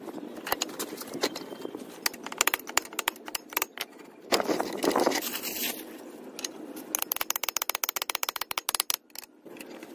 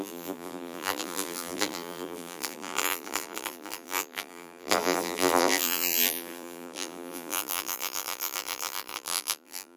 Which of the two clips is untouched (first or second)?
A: first